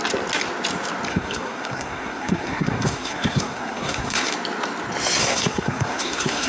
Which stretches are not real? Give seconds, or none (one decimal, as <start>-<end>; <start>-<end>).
1.1-4.3; 5.2-6.5